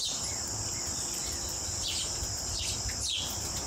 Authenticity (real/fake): real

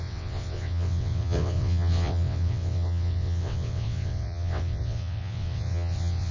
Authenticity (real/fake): fake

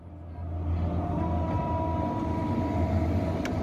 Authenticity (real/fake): real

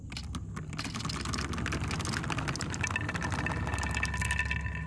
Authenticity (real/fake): real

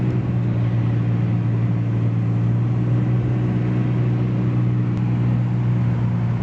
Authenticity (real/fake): real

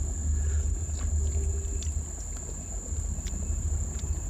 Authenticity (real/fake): real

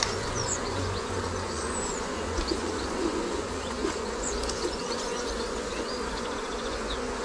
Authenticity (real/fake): fake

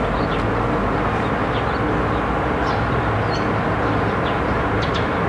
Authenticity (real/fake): real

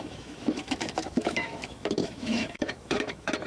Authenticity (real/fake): fake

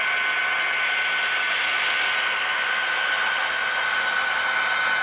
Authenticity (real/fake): real